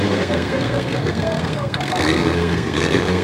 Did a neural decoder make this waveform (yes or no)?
yes